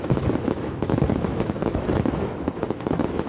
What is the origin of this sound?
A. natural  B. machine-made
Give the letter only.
B